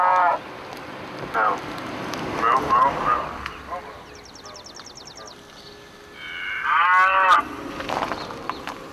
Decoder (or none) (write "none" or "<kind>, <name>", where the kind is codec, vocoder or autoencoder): none